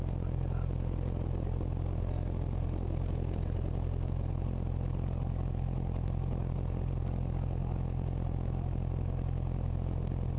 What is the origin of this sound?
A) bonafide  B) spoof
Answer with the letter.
A